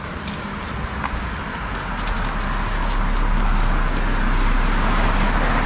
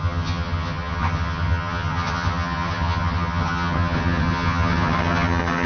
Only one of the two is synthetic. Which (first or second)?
second